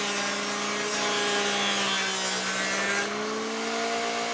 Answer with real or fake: real